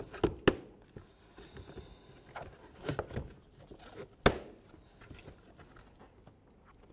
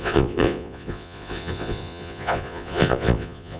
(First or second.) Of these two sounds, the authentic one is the first